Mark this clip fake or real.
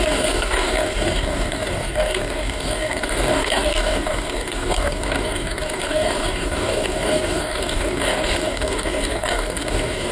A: fake